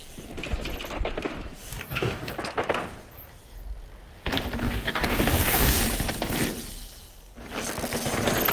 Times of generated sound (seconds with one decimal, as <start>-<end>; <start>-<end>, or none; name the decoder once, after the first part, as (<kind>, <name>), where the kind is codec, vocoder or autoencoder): 1.7-2.3 (codec, DAC); 4.6-5.8